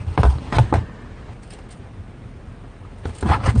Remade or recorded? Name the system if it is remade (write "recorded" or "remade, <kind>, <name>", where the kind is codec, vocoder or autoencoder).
recorded